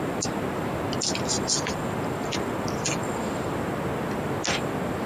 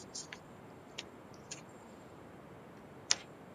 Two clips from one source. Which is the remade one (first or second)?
second